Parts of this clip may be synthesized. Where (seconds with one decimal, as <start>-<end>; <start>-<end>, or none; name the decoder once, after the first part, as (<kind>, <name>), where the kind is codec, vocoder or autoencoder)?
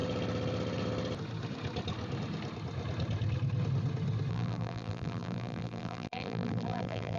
4.3-7.2 (vocoder, BigVGAN v2)